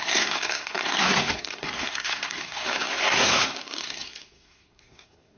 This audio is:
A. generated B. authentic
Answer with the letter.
A